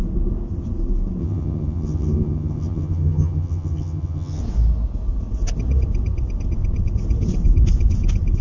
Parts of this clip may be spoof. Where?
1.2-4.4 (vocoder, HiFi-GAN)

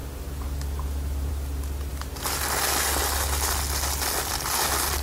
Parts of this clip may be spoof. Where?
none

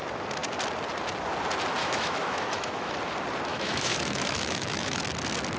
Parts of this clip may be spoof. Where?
1.8-2.9 (autoencoder, DAC-VAE); 3.5-5.0

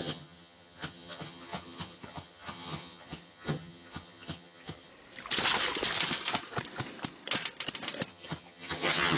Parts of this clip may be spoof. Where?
0.0-4.9 (vocoder, HiFi-GAN); 8.1-9.2